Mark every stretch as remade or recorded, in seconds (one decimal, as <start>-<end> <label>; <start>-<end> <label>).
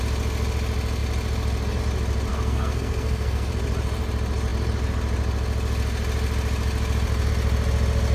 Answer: 0.0-2.3 recorded; 2.3-3.5 remade; 3.5-8.1 recorded